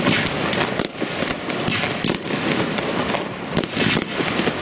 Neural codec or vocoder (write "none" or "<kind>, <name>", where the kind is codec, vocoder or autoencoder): none